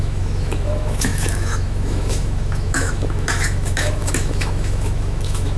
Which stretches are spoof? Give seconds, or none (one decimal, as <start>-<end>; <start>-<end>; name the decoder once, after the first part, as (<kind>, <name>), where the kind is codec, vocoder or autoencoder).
0.0-5.6 (autoencoder, DAC-VAE)